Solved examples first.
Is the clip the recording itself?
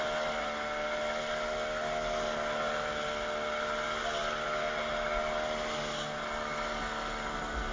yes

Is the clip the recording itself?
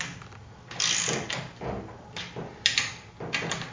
yes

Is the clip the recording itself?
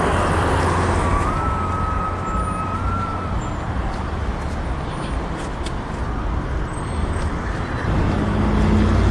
yes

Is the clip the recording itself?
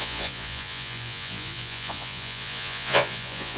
no